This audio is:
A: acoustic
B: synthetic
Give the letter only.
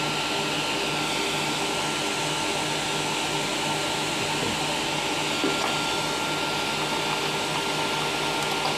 A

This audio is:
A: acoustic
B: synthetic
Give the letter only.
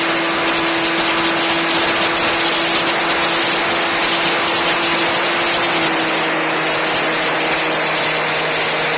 A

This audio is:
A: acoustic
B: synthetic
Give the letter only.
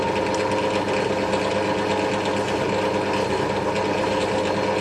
A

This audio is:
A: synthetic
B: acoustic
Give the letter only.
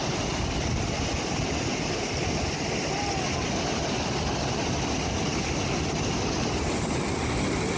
B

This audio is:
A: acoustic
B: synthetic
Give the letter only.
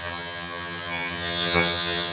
B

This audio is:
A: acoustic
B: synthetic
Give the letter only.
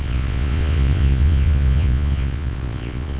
B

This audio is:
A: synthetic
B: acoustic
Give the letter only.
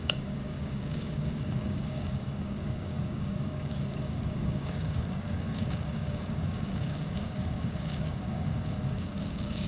A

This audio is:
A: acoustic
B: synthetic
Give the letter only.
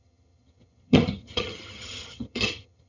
B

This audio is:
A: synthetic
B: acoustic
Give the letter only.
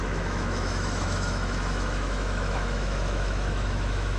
A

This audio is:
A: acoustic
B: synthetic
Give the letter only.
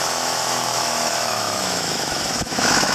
B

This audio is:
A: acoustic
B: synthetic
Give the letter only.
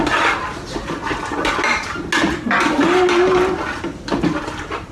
A